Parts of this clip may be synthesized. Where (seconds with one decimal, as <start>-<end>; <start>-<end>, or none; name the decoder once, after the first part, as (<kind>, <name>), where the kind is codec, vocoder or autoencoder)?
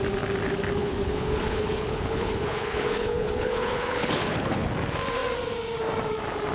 0.8-4.7 (codec, HILCodec)